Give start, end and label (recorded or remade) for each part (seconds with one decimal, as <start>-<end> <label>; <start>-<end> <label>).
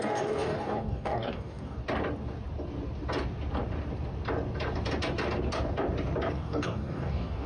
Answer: 0.0-1.8 remade; 1.8-6.3 recorded; 6.3-7.5 remade